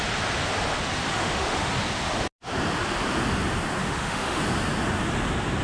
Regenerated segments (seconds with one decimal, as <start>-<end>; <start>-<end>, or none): 1.1-1.7; 3.8-4.4